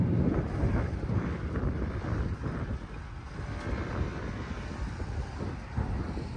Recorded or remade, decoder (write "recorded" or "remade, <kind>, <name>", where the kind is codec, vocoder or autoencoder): recorded